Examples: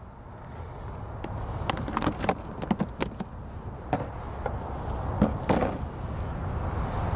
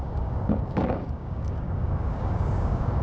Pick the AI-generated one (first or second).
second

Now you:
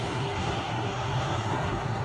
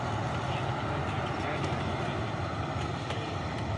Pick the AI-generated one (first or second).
first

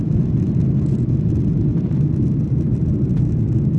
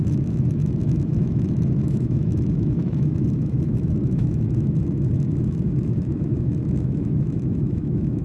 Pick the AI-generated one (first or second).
second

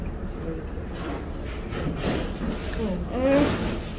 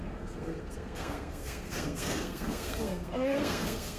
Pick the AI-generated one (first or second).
second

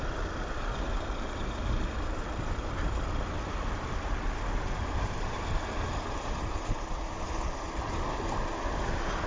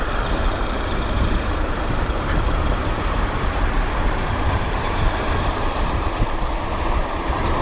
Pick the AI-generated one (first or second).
second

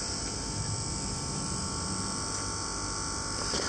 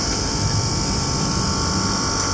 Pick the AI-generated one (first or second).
second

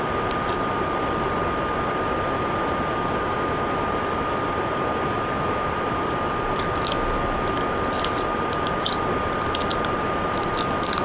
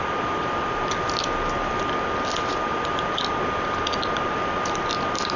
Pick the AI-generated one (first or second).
first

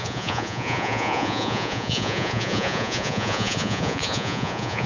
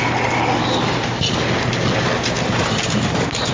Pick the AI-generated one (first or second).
first